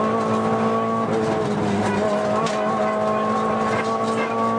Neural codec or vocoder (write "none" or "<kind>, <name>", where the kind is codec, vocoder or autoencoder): none